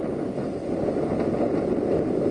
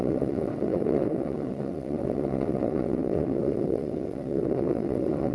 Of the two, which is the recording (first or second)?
first